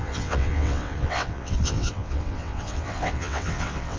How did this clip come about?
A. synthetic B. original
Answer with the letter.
A